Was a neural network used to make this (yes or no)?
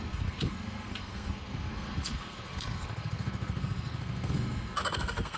yes